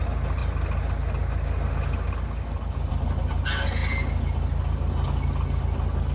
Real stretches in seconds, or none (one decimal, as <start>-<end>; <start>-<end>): 0.0-6.1